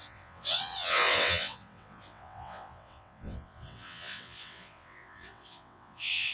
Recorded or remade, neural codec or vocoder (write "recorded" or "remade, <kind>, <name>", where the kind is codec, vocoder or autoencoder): remade, vocoder, WaveNeXt